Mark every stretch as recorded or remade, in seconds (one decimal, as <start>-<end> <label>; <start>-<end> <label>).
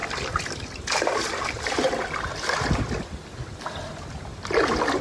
0.0-5.0 recorded